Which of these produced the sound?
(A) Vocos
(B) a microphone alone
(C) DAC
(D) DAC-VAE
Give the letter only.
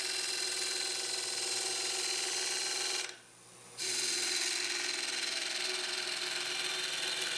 B